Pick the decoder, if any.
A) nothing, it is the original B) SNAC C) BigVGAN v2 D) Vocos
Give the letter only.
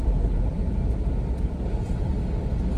A